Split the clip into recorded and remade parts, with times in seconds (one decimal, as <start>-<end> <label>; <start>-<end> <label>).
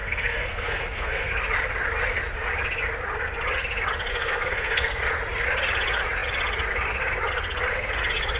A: 0.0-1.3 remade; 1.3-4.1 recorded; 4.1-5.0 remade; 5.0-8.4 recorded